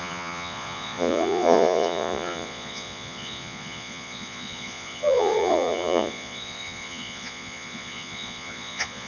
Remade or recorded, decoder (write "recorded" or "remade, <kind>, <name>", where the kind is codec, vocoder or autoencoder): remade, vocoder, Vocos